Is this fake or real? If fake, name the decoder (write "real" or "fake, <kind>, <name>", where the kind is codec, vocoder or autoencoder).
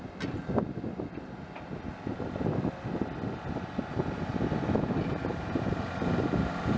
real